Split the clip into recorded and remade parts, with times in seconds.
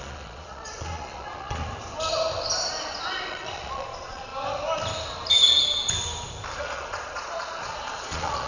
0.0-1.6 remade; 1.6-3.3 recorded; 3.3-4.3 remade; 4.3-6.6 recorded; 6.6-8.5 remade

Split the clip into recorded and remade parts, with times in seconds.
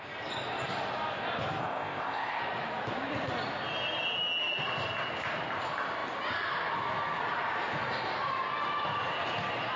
0.0-1.6 recorded; 1.6-2.4 remade; 2.4-9.8 recorded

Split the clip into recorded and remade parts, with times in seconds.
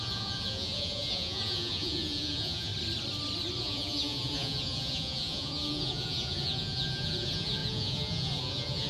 0.0-2.7 remade; 2.7-3.6 recorded; 3.6-8.9 remade